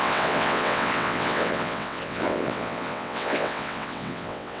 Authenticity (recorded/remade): remade